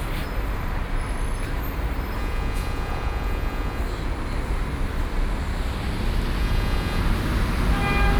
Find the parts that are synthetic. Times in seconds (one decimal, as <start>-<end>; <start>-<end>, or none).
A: 2.2-3.8; 6.4-7.0